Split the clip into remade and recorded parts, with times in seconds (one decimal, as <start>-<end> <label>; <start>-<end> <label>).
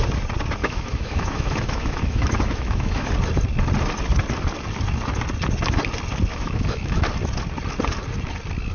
0.0-0.6 recorded; 0.6-3.1 remade; 3.1-6.3 recorded; 6.3-7.0 remade; 7.0-8.7 recorded